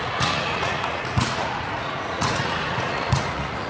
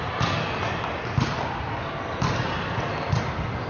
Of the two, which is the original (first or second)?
second